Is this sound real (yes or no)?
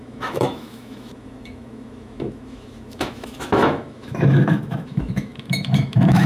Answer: no